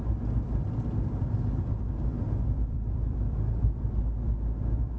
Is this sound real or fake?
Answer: fake